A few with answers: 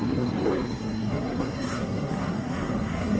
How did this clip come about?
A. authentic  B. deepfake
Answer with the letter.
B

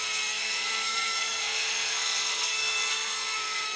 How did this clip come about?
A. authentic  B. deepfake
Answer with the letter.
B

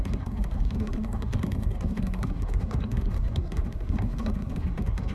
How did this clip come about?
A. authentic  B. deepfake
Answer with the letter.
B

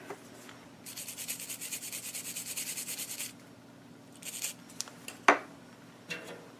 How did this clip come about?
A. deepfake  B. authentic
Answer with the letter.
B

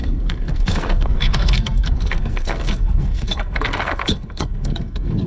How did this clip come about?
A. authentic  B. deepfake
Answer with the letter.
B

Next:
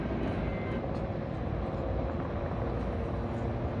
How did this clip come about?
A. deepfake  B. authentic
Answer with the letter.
B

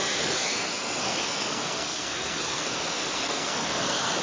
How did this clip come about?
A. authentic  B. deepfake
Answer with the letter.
B